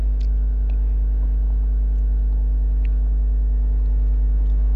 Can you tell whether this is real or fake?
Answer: real